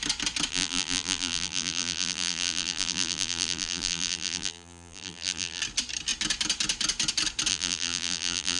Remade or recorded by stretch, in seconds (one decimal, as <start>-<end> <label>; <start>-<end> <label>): 0.0-0.5 recorded; 0.5-5.6 remade; 5.6-7.5 recorded; 7.5-8.6 remade